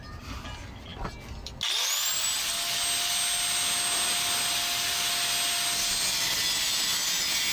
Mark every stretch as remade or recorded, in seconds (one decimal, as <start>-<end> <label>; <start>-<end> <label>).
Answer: 0.0-7.5 recorded